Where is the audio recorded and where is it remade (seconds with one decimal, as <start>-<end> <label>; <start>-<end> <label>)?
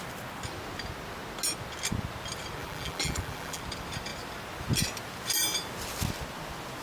0.0-2.6 recorded; 2.6-3.6 remade; 3.6-6.8 recorded